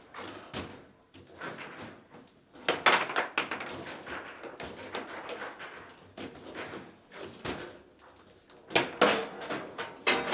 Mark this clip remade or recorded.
recorded